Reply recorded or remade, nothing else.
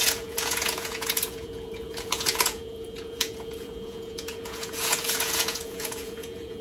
remade